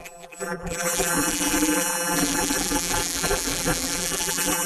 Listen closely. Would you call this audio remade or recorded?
remade